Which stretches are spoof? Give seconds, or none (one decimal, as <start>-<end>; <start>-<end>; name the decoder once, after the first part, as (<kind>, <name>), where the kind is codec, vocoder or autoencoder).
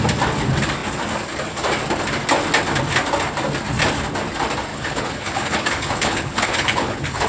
4.7-7.3 (codec, HILCodec)